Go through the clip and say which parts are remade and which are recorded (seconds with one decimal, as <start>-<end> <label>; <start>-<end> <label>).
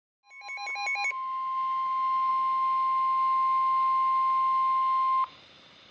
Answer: 0.0-5.9 recorded